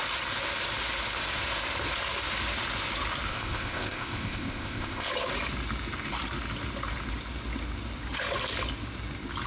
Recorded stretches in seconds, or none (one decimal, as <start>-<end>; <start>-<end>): 0.0-3.3; 5.1-9.5